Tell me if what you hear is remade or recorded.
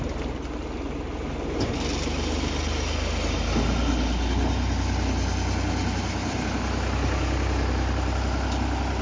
recorded